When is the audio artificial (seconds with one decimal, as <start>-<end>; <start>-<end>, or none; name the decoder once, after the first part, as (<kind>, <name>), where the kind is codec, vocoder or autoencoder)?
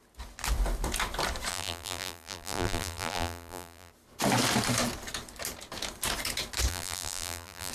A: 1.5-3.9 (vocoder, BigVGAN v2); 6.7-7.7